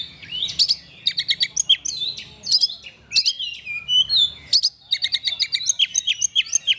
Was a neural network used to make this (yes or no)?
no